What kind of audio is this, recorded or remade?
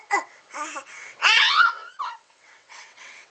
remade